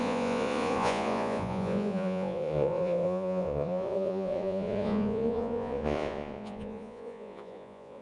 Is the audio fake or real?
fake